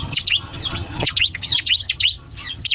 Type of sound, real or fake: fake